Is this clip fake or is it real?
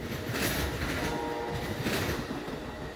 real